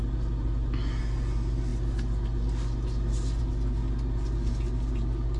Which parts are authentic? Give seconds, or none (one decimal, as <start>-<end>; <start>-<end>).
0.0-5.4